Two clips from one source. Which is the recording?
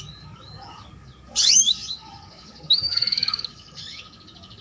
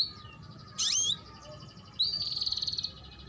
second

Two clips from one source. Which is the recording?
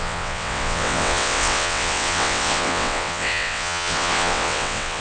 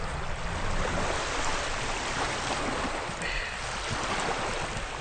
second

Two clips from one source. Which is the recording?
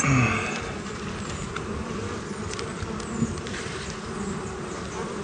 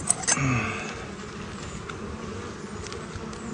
second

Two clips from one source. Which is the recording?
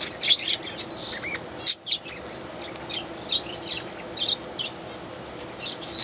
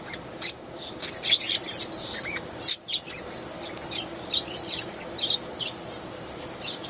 first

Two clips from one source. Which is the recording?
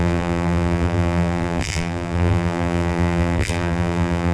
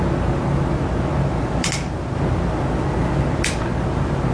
second